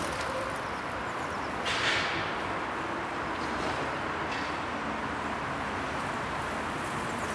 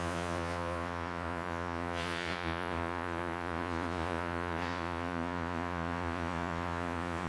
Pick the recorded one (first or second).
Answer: first